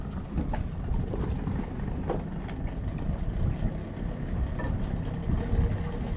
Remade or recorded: recorded